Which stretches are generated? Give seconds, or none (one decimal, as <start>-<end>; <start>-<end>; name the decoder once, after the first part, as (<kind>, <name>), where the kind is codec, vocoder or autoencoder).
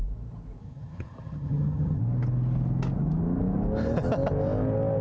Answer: 0.6-2.0 (vocoder, HiFi-GAN)